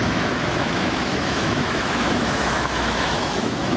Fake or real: fake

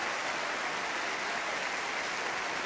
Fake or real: real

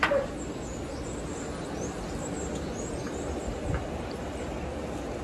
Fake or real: real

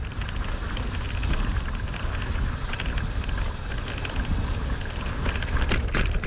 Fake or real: real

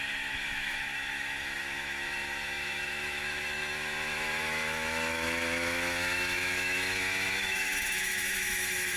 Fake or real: fake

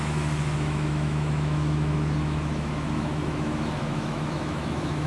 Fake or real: fake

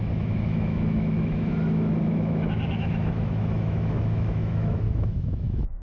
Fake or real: fake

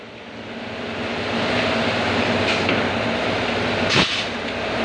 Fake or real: real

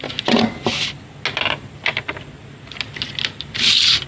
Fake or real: real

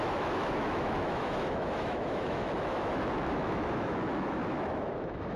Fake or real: fake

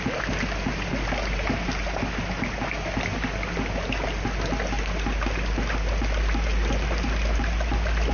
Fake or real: real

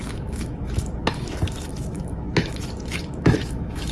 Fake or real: fake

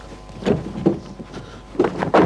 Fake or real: real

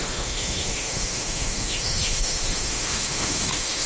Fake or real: fake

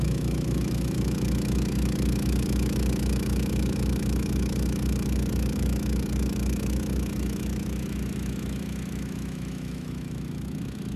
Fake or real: fake